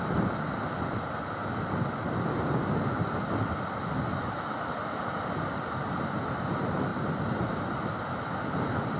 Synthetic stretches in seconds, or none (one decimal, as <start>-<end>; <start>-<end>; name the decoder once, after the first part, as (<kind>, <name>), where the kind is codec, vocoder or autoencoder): 4.1-4.6 (vocoder, BigVGAN v2)